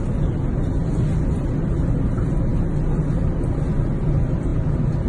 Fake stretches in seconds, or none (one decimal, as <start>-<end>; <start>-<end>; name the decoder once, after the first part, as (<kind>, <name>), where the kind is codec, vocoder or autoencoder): none